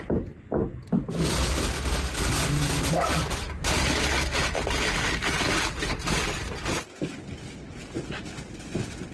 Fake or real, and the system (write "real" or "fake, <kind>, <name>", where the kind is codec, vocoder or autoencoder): real